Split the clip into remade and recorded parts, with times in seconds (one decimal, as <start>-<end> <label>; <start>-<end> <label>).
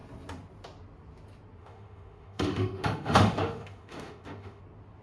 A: 0.0-1.6 recorded; 1.6-4.6 remade; 4.6-5.0 recorded